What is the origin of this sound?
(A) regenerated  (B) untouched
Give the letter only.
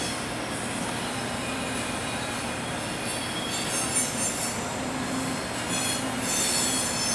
B